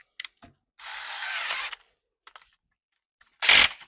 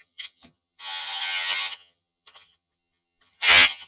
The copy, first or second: second